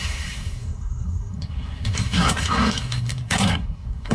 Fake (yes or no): yes